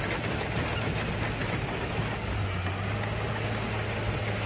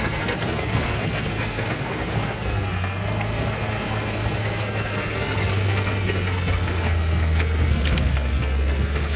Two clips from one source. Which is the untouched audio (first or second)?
first